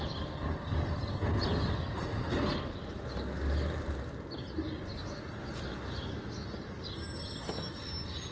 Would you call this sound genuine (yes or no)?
yes